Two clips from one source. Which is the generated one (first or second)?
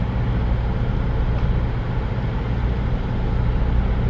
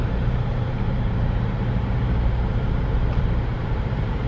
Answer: second